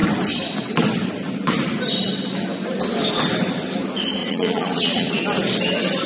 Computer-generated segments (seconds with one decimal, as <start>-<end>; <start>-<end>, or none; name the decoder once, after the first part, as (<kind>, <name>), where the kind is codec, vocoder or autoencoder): 4.2-5.2 (vocoder, Vocos)